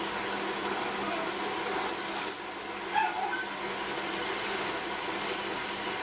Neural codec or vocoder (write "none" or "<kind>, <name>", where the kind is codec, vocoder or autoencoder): none